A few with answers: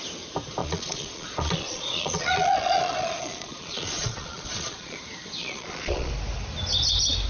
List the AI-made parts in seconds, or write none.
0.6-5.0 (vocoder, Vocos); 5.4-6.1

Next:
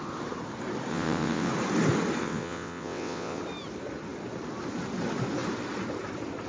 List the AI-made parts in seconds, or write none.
0.9-1.5 (vocoder, WaveNeXt); 2.2-3.4

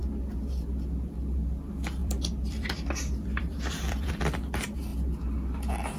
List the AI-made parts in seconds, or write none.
2.0-4.1 (vocoder, BigVGAN v2)